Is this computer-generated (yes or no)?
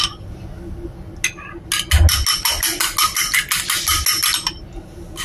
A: no